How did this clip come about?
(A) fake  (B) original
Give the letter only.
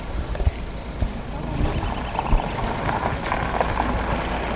B